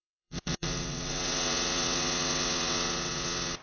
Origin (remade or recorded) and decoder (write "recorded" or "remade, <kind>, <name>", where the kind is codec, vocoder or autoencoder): remade, vocoder, WaveNeXt